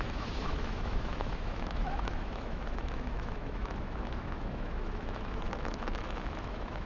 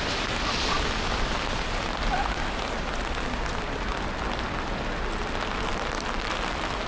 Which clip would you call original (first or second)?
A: second